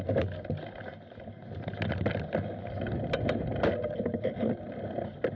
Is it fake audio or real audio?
real